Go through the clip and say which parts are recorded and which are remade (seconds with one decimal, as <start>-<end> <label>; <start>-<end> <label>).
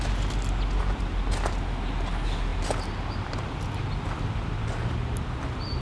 0.0-5.8 recorded